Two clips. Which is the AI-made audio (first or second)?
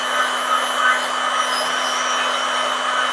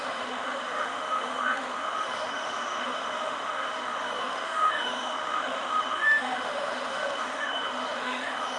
second